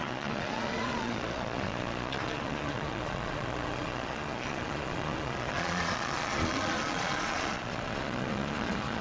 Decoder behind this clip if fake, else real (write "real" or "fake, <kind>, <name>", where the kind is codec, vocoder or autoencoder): fake, vocoder, Vocos